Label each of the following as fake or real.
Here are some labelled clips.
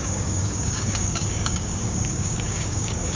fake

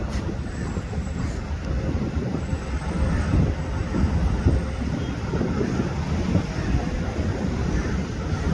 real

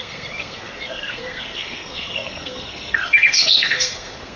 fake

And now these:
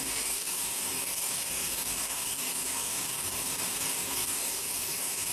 fake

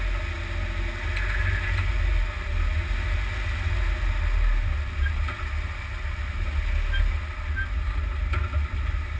real